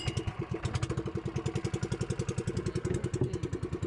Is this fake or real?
real